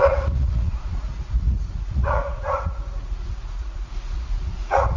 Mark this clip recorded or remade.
remade